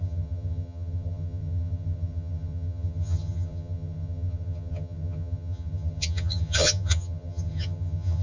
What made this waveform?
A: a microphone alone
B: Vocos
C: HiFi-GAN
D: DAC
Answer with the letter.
C